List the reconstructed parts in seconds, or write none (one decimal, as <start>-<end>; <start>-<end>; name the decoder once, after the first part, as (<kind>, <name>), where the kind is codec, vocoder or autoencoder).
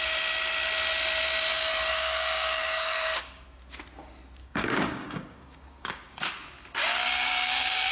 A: 1.9-3.4 (codec, DAC); 4.4-6.3; 6.8-7.9